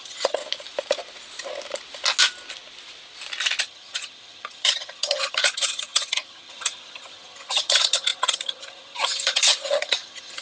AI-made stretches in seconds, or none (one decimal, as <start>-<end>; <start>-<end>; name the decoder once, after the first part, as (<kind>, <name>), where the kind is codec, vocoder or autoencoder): 0.0-0.4 (vocoder, HiFi-GAN); 3.6-10.4